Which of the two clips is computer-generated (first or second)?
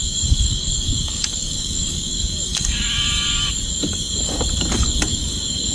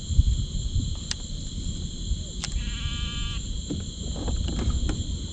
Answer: first